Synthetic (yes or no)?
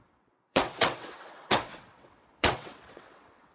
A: yes